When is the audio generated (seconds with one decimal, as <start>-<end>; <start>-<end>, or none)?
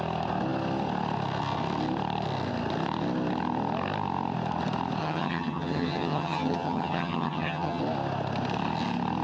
5.0-7.8